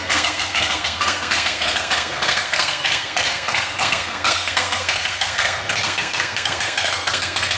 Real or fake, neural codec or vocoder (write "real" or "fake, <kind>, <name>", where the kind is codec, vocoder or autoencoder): fake, codec, SNAC